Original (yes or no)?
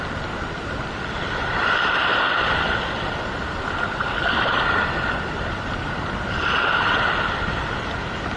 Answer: yes